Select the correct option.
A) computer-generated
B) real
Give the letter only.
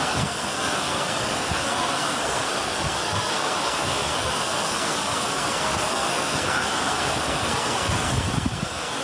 A